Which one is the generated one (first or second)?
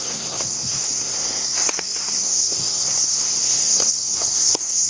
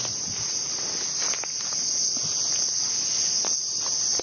first